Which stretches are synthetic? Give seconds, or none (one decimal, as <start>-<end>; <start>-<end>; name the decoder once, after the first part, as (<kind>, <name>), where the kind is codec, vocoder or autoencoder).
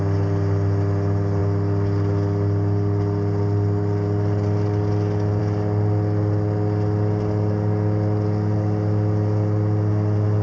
none